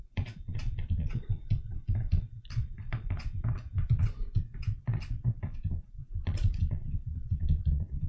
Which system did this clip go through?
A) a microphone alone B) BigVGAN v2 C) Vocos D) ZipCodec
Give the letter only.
C